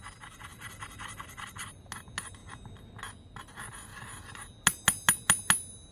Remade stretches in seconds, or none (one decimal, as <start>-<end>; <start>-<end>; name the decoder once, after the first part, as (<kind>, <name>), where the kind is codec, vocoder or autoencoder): none